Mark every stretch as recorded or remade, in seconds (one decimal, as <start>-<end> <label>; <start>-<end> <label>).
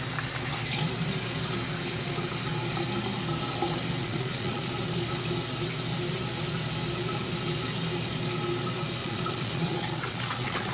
0.0-4.0 recorded; 4.0-4.7 remade; 4.7-9.0 recorded; 9.0-10.7 remade